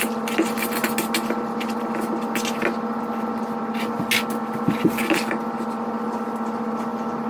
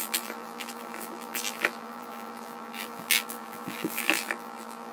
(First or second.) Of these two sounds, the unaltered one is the first